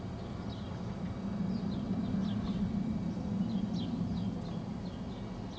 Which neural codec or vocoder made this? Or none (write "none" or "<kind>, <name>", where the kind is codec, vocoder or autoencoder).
none